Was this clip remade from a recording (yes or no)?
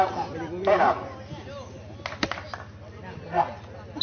no